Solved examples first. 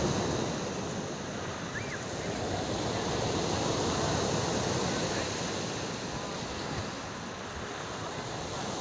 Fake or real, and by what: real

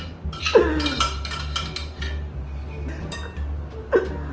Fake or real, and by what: real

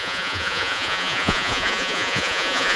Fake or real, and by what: fake, vocoder, Vocos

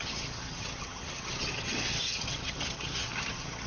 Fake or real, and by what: fake, vocoder, HiFi-GAN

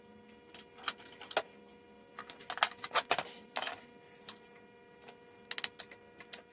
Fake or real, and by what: real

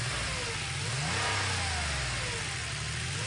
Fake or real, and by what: real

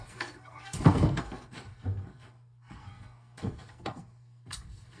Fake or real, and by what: fake, codec, SNAC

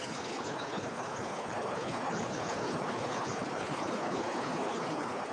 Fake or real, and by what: fake, codec, HILCodec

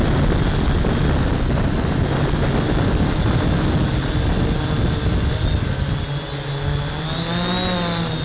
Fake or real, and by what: real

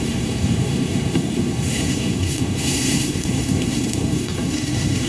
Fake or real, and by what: fake, codec, SNAC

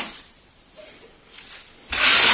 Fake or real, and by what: real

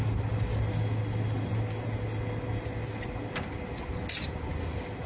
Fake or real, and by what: real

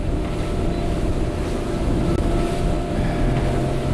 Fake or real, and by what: real